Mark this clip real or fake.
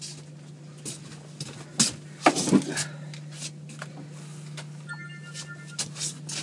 real